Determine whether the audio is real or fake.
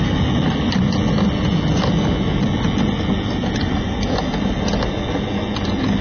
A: real